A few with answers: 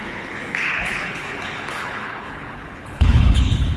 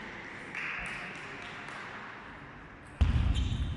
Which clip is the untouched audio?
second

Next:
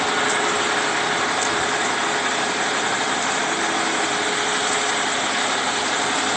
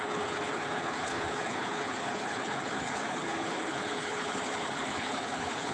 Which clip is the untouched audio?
first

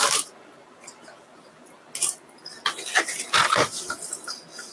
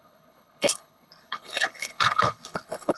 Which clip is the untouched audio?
first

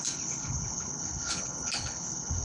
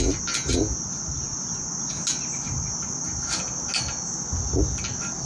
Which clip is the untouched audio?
second